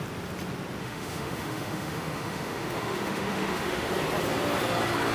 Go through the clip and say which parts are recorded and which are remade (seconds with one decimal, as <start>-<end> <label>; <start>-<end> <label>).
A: 0.0-0.8 recorded; 0.8-3.9 remade; 3.9-5.1 recorded